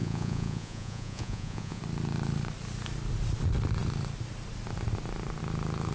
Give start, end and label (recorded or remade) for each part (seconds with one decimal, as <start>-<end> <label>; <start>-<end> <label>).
0.0-1.8 remade; 1.8-5.9 recorded